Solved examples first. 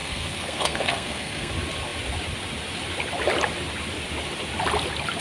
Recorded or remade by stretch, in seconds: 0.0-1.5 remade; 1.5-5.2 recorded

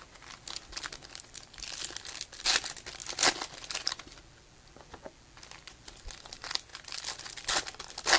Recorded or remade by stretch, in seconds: 0.0-8.2 recorded

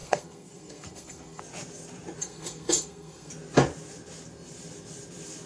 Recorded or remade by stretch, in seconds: 0.0-1.4 remade; 1.4-2.2 recorded; 2.2-3.3 remade; 3.3-5.5 recorded

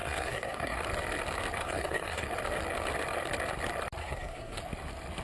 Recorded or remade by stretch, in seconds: 0.0-0.8 remade; 0.8-1.6 recorded; 1.6-2.3 remade; 2.3-4.0 recorded; 4.0-4.6 remade; 4.6-5.2 recorded

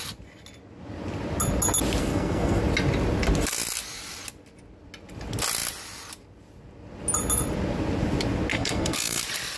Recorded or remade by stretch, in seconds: 0.0-2.0 recorded; 2.0-2.6 remade; 2.6-8.5 recorded; 8.5-9.2 remade; 9.2-9.6 recorded

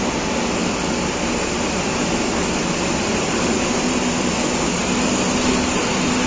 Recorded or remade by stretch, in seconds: 0.0-6.3 recorded

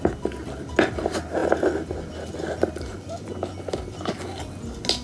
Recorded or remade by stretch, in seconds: 0.0-5.0 recorded

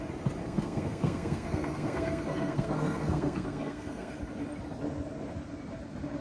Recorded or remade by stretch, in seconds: 0.0-0.4 recorded; 0.4-4.1 remade; 4.1-6.2 recorded